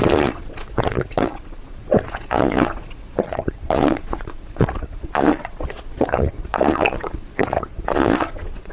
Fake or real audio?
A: fake